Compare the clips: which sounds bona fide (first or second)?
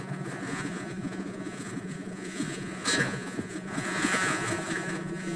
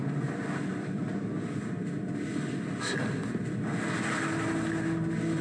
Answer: second